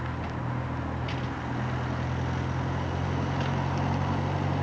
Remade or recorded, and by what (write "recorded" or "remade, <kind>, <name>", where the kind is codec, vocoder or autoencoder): recorded